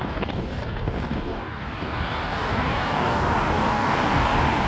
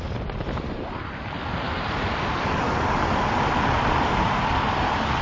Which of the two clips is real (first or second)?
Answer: second